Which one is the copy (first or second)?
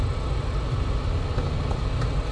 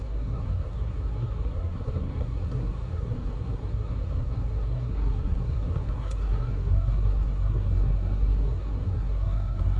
second